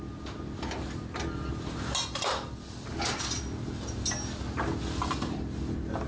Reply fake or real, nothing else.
real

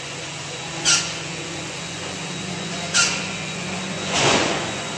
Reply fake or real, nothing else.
fake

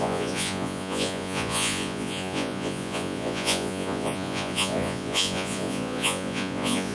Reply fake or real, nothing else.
fake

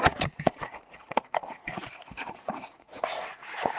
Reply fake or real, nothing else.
fake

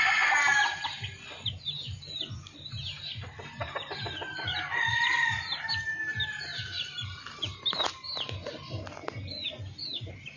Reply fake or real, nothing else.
real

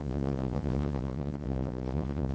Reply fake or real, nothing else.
fake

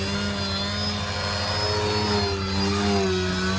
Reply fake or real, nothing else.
real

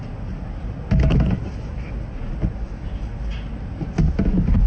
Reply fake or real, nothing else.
real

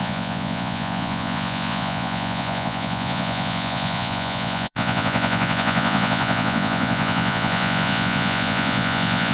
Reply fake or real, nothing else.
fake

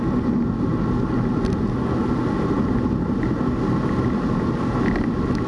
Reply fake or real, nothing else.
real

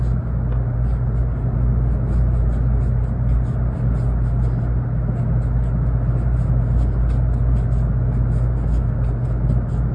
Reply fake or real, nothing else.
real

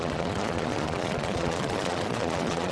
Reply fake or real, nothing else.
fake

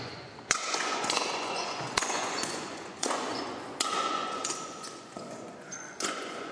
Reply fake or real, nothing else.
fake